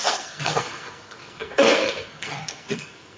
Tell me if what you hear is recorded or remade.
remade